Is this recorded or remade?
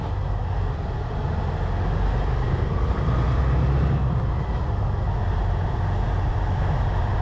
recorded